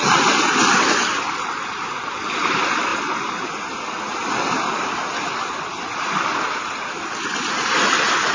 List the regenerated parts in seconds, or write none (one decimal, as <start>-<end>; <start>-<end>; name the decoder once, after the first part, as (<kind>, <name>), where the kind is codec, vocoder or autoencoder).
2.9-4.3 (vocoder, BigVGAN v2)